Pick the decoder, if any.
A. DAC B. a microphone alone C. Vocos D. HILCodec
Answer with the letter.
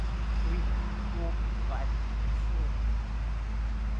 B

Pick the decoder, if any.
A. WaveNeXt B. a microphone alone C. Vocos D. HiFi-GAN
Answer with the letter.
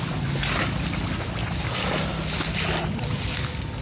B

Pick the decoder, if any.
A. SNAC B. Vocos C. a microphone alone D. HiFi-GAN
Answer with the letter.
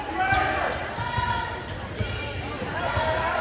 C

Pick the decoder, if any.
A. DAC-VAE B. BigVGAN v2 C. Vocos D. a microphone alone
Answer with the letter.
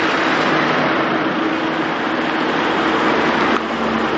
D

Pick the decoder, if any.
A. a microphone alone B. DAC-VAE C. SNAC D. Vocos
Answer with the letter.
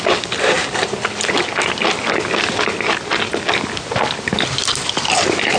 A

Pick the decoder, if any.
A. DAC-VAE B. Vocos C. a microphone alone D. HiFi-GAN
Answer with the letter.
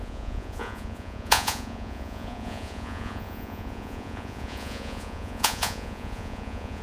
B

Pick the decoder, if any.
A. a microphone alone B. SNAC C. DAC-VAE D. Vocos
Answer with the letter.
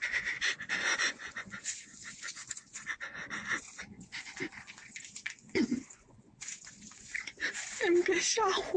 D